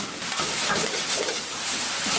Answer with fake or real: real